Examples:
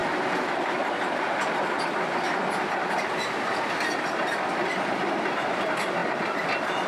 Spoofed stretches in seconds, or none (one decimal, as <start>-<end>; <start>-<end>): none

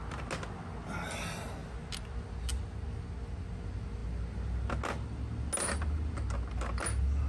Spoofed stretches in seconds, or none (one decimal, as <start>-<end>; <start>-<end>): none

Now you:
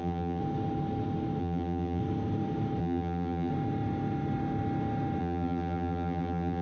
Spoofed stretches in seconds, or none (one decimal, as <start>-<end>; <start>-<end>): 0.0-0.4; 1.4-2.0; 2.8-3.5; 5.2-6.6

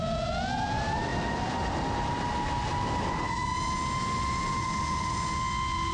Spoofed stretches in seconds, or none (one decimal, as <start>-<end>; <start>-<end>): none

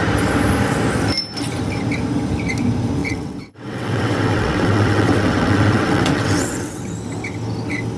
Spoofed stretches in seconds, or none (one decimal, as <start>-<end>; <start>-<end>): 3.0-6.8